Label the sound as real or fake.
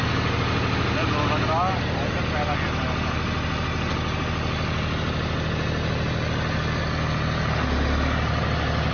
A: real